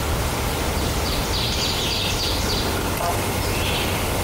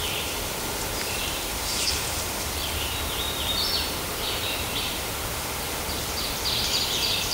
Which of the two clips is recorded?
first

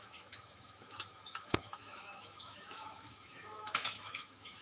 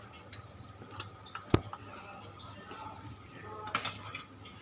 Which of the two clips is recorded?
second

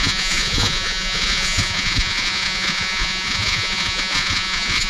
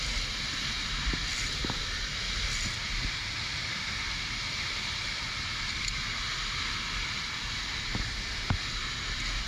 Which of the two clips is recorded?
second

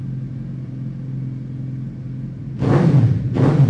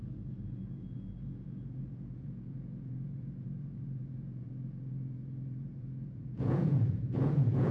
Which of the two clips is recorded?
first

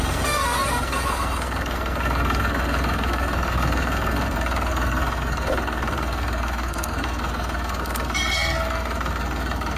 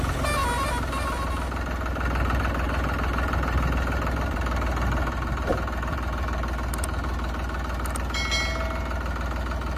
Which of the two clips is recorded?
second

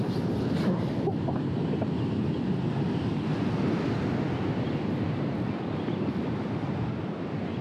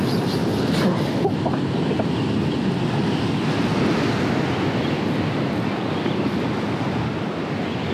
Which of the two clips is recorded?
second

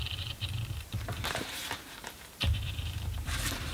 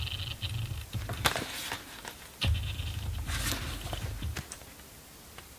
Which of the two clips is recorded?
second